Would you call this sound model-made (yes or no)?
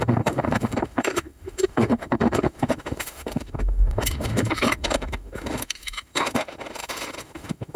yes